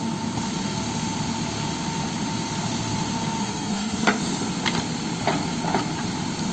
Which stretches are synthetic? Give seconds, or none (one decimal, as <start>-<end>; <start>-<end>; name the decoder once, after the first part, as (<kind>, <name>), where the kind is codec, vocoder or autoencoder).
3.4-4.2 (codec, SNAC)